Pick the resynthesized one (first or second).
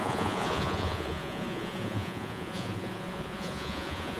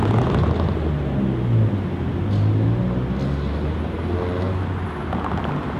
first